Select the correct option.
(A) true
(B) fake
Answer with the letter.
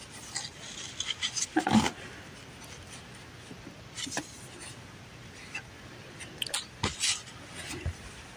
A